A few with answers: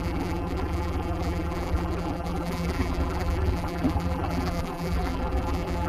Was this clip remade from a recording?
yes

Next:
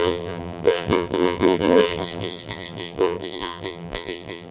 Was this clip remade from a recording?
yes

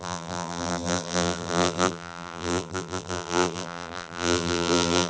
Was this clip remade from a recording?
yes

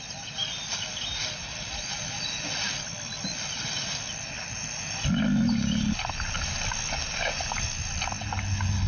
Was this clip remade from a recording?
no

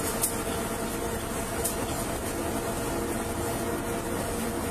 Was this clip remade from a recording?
no